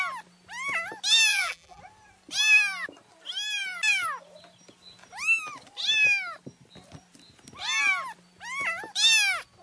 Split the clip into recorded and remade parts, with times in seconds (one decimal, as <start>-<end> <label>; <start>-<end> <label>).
0.0-1.3 recorded; 1.3-1.8 remade; 1.8-9.6 recorded